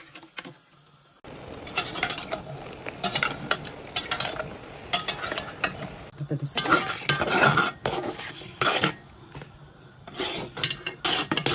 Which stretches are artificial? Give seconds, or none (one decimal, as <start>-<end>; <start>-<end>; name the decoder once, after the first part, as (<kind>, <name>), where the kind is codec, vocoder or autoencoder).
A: 7.8-9.2 (codec, DAC)